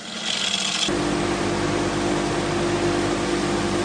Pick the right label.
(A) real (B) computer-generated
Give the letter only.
A